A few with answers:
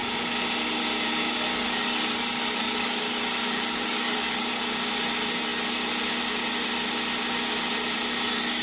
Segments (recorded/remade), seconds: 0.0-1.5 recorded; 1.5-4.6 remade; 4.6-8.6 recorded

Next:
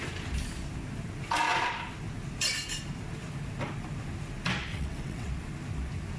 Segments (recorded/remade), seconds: 0.0-4.7 recorded; 4.7-5.3 remade; 5.3-6.2 recorded

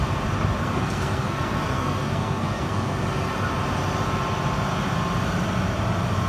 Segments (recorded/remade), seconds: 0.0-0.6 recorded; 0.6-3.0 remade; 3.0-6.3 recorded

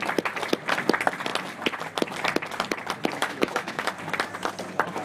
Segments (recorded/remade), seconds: 0.0-3.2 recorded; 3.2-3.9 remade; 3.9-5.0 recorded

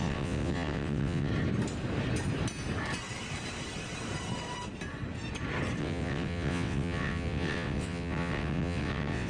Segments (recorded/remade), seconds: 0.0-1.3 remade; 1.3-5.8 recorded; 5.8-9.3 remade

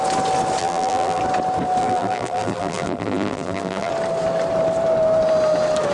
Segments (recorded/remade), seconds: 0.0-0.6 recorded; 0.6-1.2 remade; 1.2-1.8 recorded; 1.8-3.9 remade; 3.9-5.9 recorded

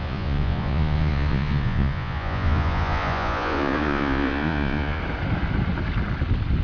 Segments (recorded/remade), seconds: 0.0-5.0 remade; 5.0-6.6 recorded

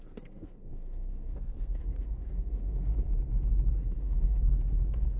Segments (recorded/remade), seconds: 0.0-2.9 remade; 2.9-3.7 recorded; 3.7-4.5 remade; 4.5-5.2 recorded